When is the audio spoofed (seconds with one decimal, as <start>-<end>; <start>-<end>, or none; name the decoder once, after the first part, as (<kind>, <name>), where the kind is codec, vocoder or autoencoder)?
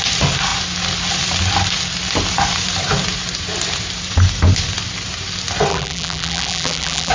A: 5.7-7.1 (vocoder, BigVGAN v2)